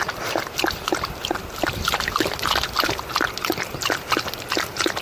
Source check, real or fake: real